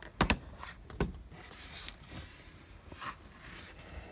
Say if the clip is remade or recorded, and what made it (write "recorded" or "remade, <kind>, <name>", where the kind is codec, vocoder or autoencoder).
recorded